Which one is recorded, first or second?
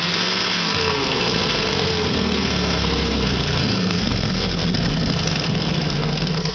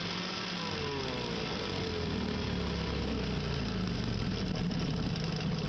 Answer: second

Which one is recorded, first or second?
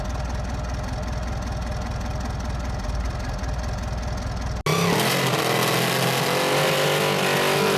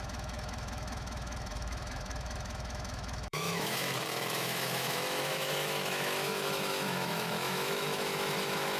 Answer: first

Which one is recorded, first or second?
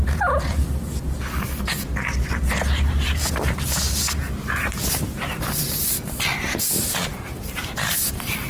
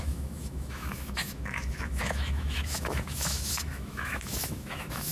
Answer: first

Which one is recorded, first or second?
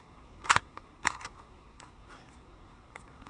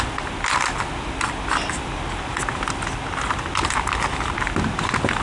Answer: second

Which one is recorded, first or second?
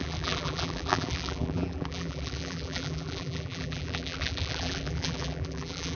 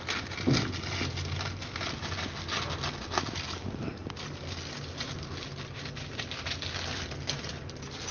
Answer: second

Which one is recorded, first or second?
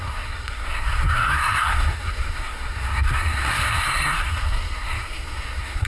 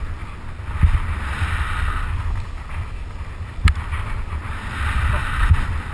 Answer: second